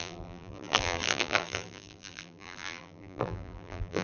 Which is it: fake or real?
fake